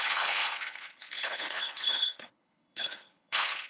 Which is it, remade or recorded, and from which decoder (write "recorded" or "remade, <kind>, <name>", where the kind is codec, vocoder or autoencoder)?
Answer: remade, codec, HILCodec